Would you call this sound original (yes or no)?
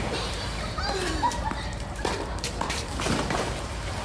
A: no